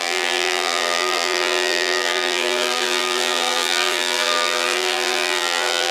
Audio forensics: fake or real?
fake